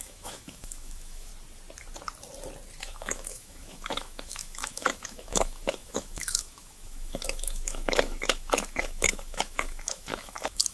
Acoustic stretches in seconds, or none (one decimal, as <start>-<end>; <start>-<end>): 1.3-2.8

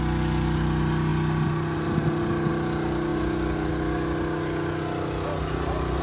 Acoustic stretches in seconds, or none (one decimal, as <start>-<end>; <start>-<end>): 0.0-6.0